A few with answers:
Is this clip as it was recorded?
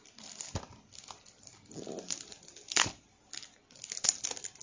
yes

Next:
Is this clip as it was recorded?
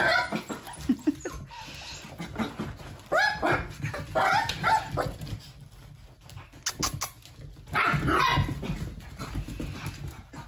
yes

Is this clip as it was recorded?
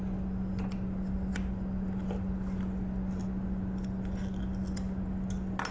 yes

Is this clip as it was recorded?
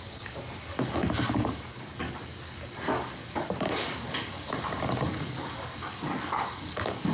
no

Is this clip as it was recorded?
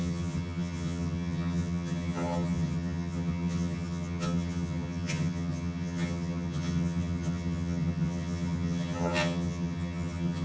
no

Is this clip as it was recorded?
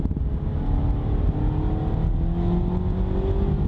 yes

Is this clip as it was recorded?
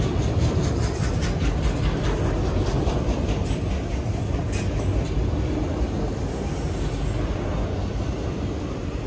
yes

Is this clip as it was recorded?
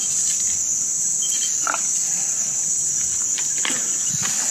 yes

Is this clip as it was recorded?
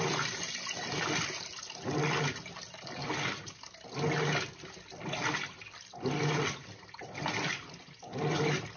yes